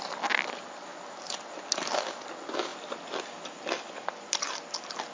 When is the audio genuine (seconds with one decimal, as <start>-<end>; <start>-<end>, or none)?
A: 0.0-5.1